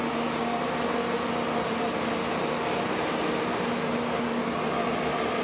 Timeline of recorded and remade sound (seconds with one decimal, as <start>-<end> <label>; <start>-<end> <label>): 0.0-5.4 recorded